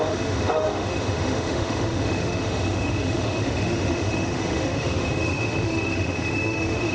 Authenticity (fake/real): fake